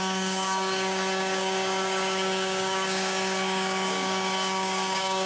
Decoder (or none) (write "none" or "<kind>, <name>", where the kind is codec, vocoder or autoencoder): codec, DAC